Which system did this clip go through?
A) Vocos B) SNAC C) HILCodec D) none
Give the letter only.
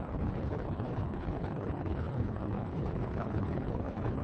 C